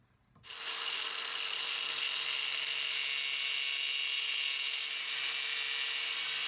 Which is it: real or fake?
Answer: real